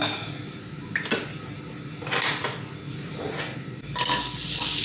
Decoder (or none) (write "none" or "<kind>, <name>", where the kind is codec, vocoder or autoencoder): none